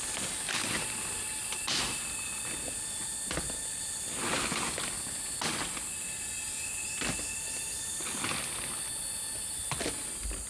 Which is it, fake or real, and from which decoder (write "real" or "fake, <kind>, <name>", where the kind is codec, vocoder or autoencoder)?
real